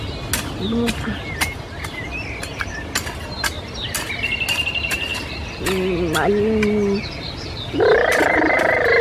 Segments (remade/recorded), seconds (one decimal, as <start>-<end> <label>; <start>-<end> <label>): 0.0-9.0 recorded